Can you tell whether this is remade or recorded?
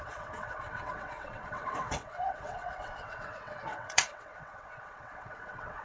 remade